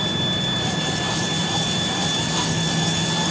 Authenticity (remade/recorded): recorded